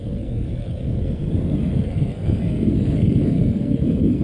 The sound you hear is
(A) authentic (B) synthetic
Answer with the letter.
B